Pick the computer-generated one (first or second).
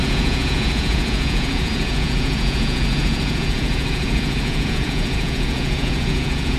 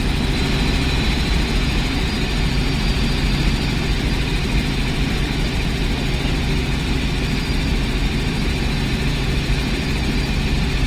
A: first